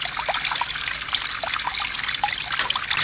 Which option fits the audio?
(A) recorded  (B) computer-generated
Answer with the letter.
A